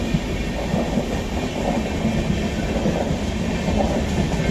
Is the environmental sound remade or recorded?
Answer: recorded